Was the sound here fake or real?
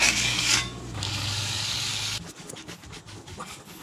fake